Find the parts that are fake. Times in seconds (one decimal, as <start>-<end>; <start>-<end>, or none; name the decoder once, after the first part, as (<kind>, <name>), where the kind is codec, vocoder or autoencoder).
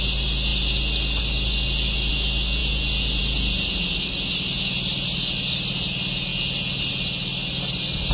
none